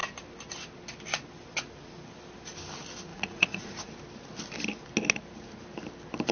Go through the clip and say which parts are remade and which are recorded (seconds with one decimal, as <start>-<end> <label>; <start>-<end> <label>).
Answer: 0.0-3.1 recorded; 3.1-3.9 remade; 3.9-6.3 recorded